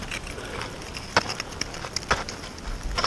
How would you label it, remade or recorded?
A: recorded